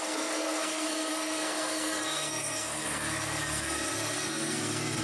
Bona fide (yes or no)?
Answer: no